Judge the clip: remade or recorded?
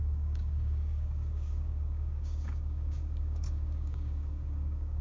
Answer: remade